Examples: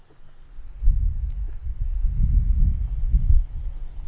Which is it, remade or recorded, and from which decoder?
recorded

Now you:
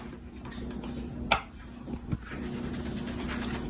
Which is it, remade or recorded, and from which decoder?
recorded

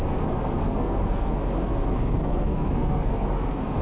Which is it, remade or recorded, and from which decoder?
remade, codec, SNAC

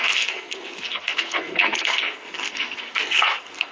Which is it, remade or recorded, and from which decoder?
remade, codec, SNAC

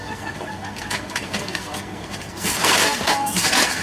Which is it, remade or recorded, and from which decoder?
remade, codec, SNAC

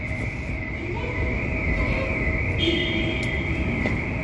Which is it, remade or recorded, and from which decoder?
recorded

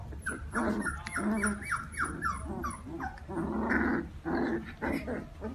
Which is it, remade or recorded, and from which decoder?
recorded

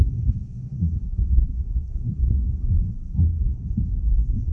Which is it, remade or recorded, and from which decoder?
remade, codec, SNAC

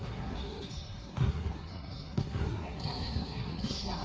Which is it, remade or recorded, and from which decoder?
remade, codec, SNAC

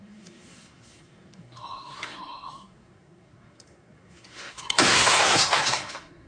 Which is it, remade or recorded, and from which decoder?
remade, codec, SNAC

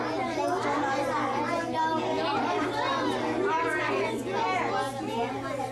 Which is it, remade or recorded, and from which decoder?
recorded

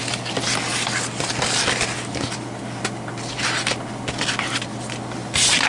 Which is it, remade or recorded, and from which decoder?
recorded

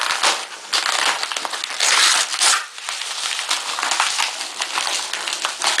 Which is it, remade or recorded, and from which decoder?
recorded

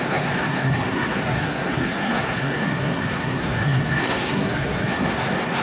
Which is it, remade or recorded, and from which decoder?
remade, codec, SNAC